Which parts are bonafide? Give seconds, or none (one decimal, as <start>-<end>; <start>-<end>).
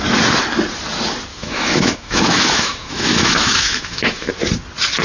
0.0-1.3; 4.3-5.0